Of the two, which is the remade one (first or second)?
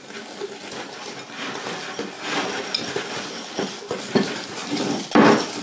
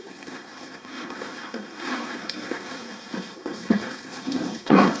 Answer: second